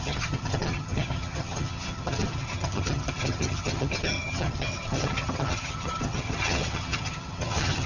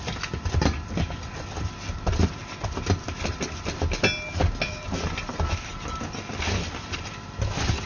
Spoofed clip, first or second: first